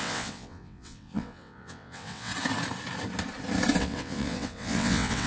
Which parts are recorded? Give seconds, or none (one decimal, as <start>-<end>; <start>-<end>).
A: 2.3-3.8

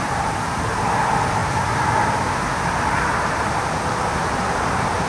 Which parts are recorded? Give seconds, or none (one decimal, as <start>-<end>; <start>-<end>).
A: 0.0-5.1

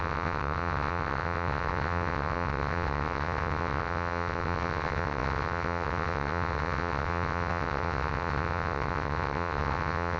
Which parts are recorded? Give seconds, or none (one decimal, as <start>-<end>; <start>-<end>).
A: none